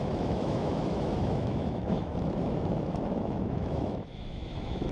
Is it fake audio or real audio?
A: fake